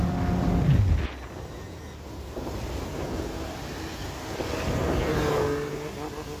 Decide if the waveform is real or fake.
real